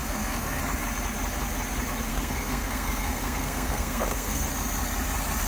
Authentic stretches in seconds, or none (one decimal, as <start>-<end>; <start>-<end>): 0.6-2.1; 4.5-5.5